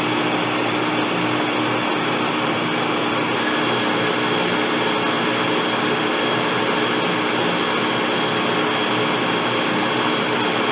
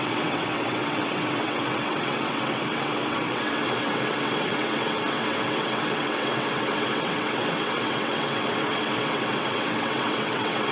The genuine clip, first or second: first